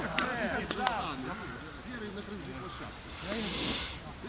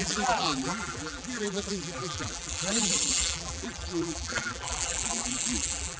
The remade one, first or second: second